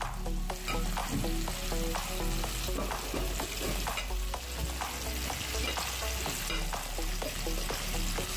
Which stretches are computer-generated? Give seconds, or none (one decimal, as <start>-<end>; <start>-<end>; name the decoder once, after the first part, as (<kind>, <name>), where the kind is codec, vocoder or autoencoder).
none